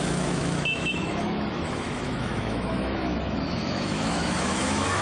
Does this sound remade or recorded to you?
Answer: remade